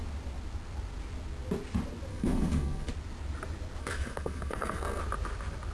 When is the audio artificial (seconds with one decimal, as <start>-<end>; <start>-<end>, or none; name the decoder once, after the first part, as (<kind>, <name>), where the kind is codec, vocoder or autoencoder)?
2.1-2.9 (codec, SNAC); 3.8-5.0